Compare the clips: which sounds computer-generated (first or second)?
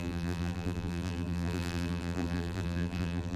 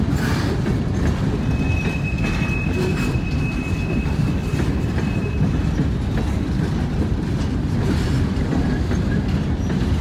first